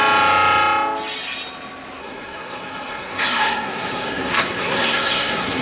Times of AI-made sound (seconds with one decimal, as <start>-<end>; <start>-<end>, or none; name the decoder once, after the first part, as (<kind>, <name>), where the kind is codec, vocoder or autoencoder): 2.0-5.6 (codec, SNAC)